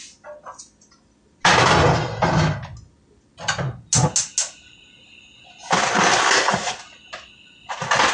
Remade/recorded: recorded